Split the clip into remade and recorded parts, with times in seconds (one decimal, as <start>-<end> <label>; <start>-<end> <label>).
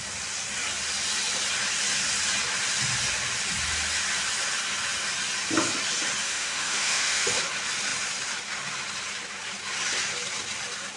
0.0-6.2 recorded; 6.2-7.4 remade; 7.4-11.0 recorded